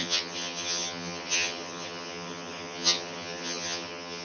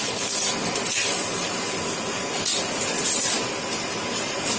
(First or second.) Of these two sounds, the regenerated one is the first